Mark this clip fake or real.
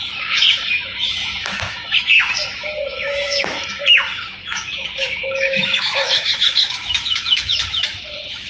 fake